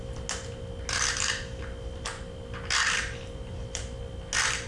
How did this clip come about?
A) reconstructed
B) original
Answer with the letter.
B